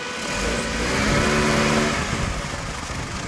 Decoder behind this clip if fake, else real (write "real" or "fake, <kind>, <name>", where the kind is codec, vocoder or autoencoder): real